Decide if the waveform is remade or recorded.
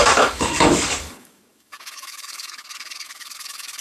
remade